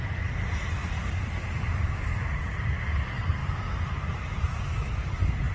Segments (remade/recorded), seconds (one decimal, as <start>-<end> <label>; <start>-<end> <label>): 0.0-5.5 recorded